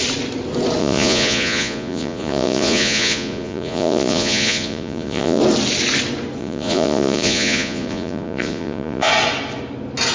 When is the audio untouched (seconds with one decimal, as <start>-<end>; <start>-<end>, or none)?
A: 0.0-0.8; 5.4-6.4; 9.1-10.1